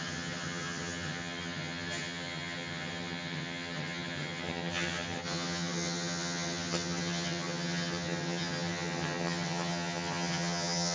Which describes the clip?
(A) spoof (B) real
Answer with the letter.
A